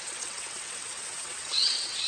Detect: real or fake fake